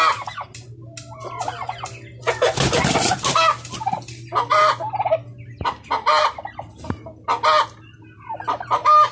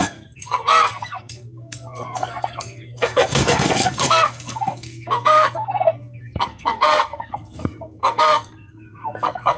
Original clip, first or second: first